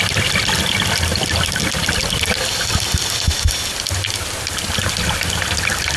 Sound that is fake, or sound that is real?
real